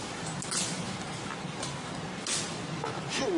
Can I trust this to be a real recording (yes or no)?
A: yes